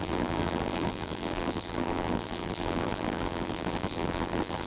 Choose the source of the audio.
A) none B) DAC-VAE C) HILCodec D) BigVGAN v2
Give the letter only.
D